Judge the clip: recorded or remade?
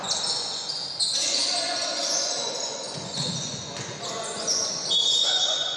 remade